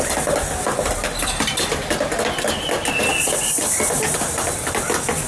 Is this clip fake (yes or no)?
no